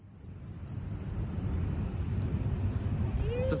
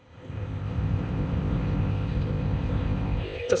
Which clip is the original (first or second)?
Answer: first